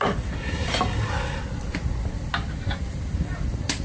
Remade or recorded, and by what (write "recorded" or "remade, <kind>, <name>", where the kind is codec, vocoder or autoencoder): recorded